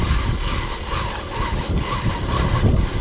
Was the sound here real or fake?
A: real